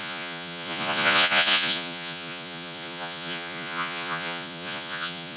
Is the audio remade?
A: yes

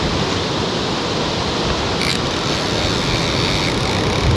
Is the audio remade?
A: no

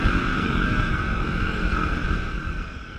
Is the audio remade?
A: yes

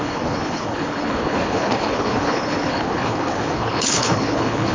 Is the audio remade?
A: yes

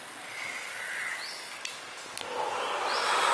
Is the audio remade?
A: no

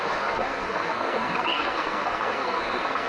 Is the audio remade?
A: yes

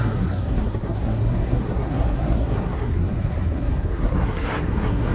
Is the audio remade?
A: yes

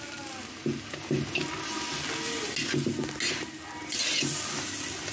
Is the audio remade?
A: no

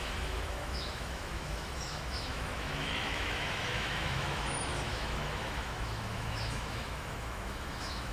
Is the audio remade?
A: yes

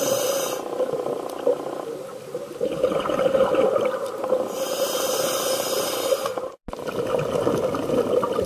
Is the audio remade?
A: no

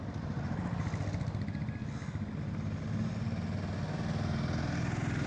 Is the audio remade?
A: no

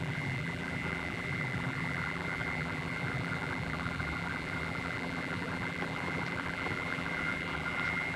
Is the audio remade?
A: yes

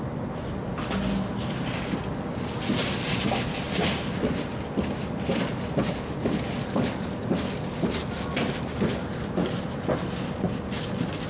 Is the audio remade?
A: no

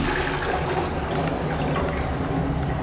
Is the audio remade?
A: no